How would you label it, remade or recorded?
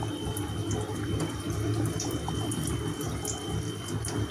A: remade